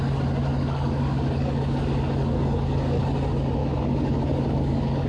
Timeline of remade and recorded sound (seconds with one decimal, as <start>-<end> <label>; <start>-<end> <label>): 0.0-0.5 recorded; 0.5-3.0 remade; 3.0-3.6 recorded; 3.6-5.1 remade